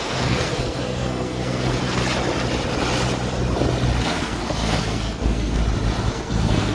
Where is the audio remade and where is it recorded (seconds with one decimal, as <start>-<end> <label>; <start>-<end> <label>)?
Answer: 0.0-2.0 remade; 2.0-4.0 recorded; 4.0-5.6 remade; 5.6-6.1 recorded; 6.1-6.7 remade